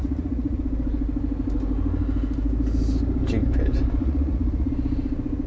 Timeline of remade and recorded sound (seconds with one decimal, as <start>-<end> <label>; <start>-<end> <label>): 0.0-0.6 remade; 0.6-4.0 recorded; 4.0-4.7 remade; 4.7-5.5 recorded